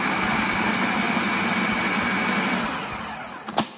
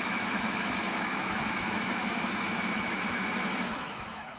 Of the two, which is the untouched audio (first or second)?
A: first